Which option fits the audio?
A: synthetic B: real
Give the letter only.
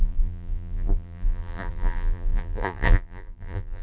A